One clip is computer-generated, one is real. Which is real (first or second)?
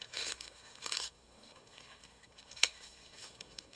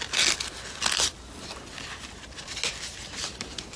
second